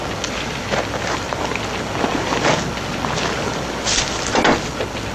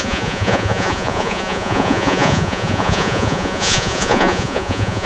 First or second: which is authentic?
first